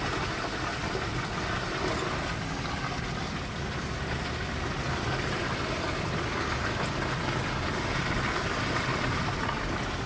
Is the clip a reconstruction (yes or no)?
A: no